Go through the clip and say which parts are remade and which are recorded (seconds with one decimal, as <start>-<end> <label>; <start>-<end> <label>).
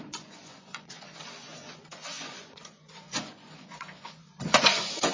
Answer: 0.0-5.1 remade